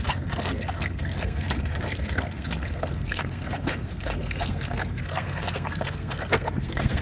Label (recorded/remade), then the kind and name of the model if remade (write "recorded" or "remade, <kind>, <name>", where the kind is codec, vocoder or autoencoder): remade, codec, SNAC